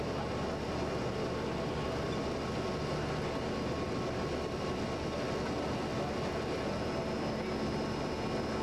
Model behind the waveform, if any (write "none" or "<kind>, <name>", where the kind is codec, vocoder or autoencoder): none